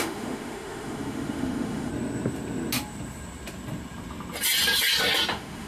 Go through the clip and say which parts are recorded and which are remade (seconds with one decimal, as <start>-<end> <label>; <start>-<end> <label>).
0.0-1.9 remade; 1.9-5.3 recorded; 5.3-5.7 remade